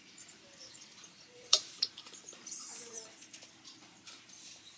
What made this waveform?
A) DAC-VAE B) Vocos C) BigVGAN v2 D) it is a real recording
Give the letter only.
C